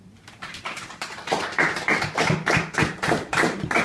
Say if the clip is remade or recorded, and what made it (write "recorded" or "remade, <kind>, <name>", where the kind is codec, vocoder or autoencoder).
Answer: remade, vocoder, BigVGAN v2